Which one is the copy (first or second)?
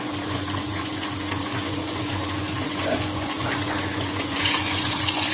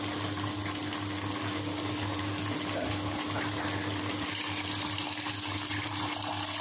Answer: first